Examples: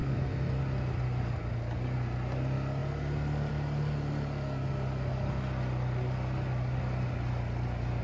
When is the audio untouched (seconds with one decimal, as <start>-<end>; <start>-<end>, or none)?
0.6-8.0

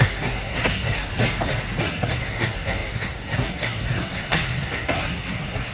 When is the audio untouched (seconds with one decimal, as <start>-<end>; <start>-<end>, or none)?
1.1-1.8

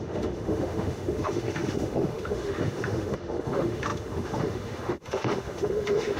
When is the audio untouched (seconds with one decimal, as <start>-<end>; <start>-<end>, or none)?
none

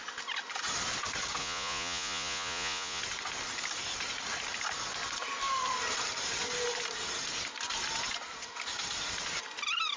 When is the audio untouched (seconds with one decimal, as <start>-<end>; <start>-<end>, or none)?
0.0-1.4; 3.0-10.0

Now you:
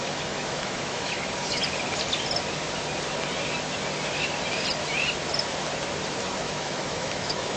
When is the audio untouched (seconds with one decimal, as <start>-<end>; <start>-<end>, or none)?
1.6-6.2

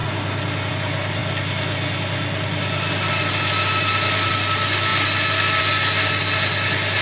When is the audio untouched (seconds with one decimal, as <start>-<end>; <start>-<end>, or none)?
0.0-7.0

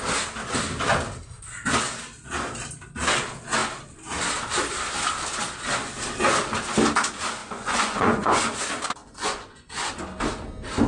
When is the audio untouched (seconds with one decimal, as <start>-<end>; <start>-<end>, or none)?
0.0-7.4; 8.4-9.0; 9.9-10.9

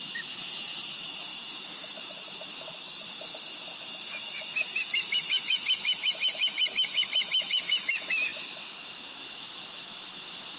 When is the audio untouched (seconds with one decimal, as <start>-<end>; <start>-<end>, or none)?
none